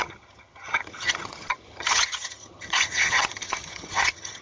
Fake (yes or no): yes